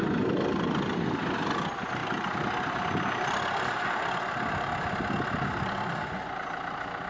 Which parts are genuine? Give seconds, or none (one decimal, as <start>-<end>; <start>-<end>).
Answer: 0.0-7.1